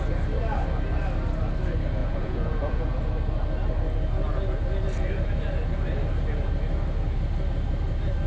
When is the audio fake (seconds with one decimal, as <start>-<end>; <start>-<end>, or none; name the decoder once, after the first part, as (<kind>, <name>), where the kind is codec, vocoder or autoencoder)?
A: 2.0-3.0 (vocoder, Vocos)